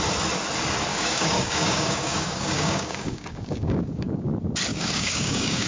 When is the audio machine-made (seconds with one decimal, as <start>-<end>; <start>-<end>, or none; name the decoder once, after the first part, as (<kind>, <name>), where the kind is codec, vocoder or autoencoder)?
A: 0.9-4.3 (codec, DAC); 4.7-5.7